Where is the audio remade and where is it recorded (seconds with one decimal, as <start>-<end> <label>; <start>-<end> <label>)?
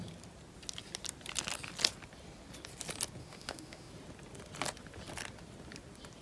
0.0-3.2 recorded; 3.2-3.9 remade; 3.9-6.2 recorded